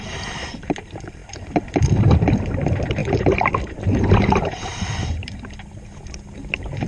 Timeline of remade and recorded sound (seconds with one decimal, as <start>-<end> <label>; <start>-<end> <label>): 0.0-3.0 recorded; 3.0-4.8 remade; 4.8-6.9 recorded